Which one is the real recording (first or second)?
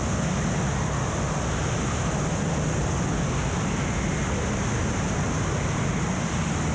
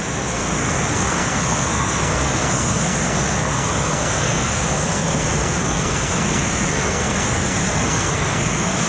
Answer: first